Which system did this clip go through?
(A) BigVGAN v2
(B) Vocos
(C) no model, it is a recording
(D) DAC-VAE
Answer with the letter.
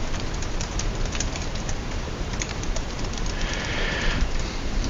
A